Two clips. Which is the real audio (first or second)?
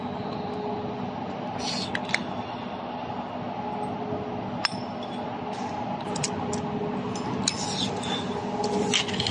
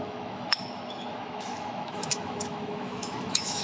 first